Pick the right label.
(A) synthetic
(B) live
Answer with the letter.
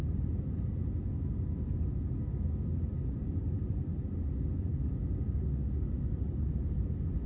B